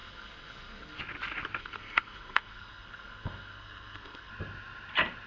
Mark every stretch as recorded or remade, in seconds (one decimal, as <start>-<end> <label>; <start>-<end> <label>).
0.0-1.0 remade; 1.0-1.6 recorded; 1.6-4.3 remade; 4.3-5.3 recorded